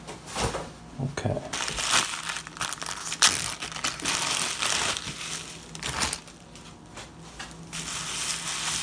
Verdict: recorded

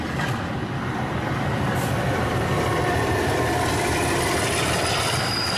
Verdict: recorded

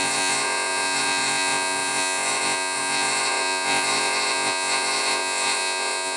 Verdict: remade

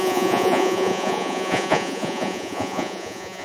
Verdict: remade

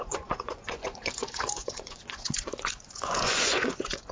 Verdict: remade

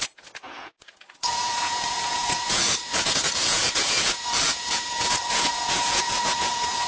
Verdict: remade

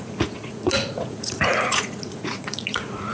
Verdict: remade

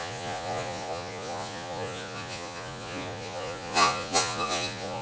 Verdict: remade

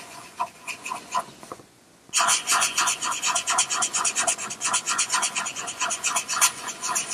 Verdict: remade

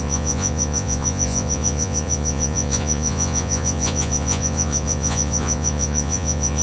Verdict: remade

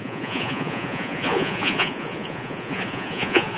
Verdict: remade